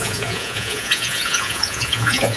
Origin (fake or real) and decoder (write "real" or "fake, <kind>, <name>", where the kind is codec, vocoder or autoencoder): fake, vocoder, Vocos